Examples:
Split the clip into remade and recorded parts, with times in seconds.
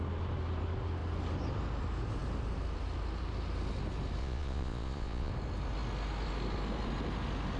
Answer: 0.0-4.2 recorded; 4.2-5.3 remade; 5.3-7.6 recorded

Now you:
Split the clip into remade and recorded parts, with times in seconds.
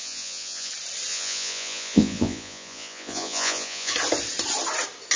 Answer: 0.0-0.7 remade; 0.7-1.1 recorded; 1.1-3.9 remade; 3.9-5.2 recorded